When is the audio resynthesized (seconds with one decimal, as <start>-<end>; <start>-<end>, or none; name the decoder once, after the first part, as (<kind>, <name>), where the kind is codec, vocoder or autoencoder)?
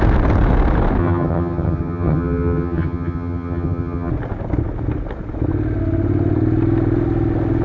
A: 1.0-4.1 (vocoder, HiFi-GAN)